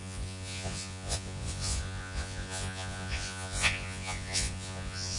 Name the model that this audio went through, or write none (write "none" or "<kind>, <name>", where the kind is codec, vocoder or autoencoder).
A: vocoder, Vocos